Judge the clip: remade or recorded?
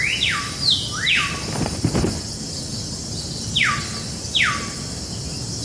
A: recorded